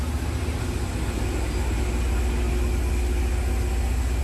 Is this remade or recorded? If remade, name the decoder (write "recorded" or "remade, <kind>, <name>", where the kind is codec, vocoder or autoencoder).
recorded